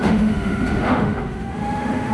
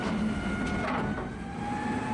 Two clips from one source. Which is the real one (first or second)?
second